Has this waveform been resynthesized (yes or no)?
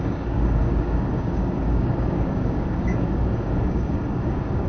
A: yes